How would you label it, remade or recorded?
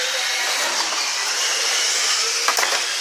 recorded